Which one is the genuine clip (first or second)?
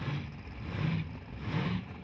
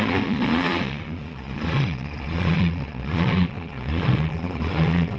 first